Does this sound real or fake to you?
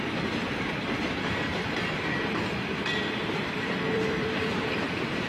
fake